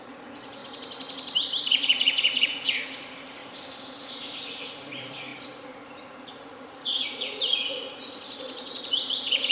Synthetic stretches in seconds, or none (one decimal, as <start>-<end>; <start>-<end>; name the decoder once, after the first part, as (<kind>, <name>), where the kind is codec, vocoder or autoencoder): 0.0-0.6 (vocoder, Vocos); 1.6-3.4; 4.0-9.5